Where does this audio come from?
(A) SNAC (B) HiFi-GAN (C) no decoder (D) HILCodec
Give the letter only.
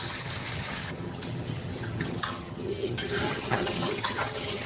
B